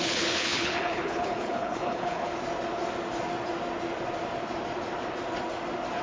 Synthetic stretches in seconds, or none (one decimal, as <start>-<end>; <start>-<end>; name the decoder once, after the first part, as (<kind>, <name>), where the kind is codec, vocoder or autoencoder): 0.0-2.3 (codec, HILCodec)